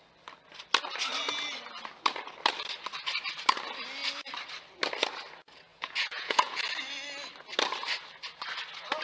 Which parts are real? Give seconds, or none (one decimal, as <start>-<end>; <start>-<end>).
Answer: 0.0-5.7; 6.6-9.0